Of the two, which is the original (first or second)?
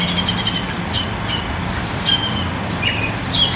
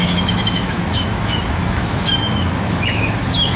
first